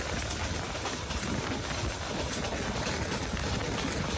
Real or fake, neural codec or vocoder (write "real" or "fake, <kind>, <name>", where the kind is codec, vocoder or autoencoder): real